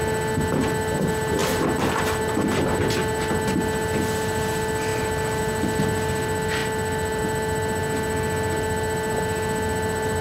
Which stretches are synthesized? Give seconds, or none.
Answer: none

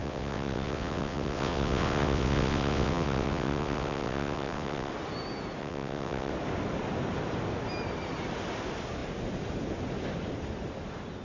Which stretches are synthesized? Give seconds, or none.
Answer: 0.0-4.9 (vocoder, WaveNeXt); 5.6-6.3

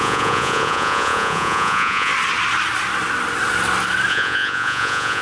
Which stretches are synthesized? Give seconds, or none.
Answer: 0.0-2.1 (vocoder, Vocos); 4.1-5.2

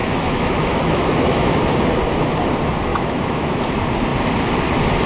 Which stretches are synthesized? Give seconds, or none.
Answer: 0.0-1.6 (autoencoder, DAC-VAE); 2.9-3.6

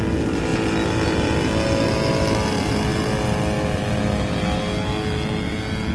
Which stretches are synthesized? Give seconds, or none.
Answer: none

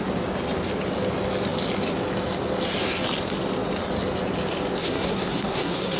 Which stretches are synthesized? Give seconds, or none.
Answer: 4.8-6.0 (codec, SNAC)